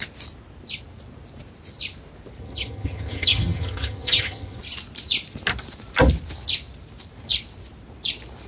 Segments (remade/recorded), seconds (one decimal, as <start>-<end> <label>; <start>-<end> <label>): 0.0-2.4 recorded; 2.4-4.6 remade; 4.6-8.5 recorded